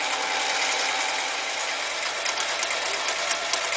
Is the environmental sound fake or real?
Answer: real